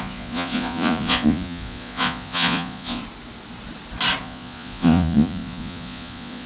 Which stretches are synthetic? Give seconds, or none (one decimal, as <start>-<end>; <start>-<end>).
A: 0.0-3.0; 4.2-6.5